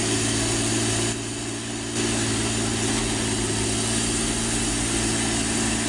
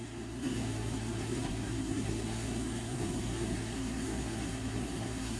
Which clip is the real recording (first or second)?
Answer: first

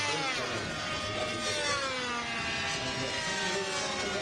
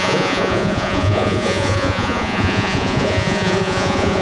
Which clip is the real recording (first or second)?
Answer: first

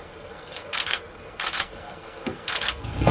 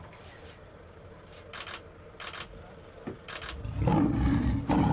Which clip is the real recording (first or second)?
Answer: second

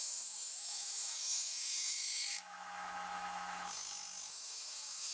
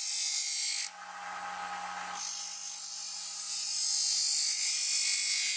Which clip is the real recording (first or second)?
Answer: second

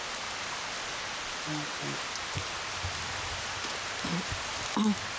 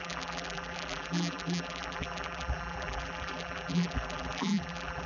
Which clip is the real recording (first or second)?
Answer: first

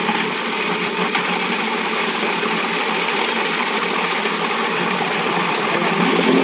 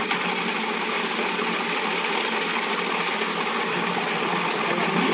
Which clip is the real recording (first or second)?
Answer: second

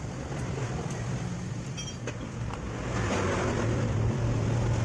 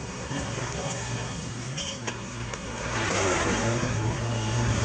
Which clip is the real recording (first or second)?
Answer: first